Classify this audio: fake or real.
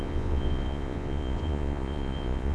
fake